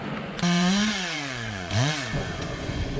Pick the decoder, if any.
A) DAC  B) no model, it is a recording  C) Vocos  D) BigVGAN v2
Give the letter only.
C